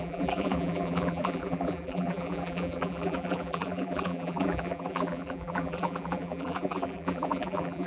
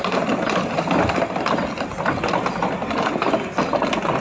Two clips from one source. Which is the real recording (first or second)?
second